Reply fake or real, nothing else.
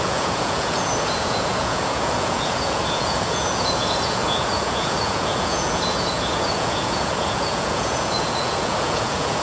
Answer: fake